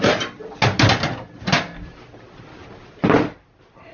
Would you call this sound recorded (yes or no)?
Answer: yes